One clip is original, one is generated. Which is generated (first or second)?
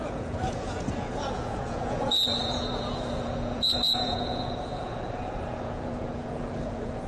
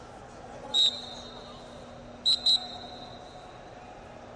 first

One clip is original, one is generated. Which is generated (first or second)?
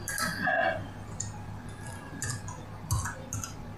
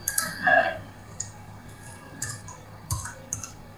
second